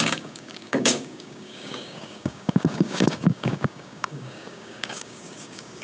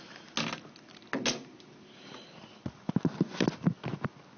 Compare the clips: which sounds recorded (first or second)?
second